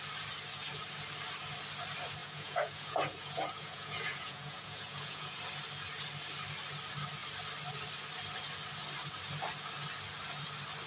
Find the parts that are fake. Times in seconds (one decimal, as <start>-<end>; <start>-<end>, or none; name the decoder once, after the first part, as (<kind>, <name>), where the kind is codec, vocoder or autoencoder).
2.2-5.4 (vocoder, Vocos)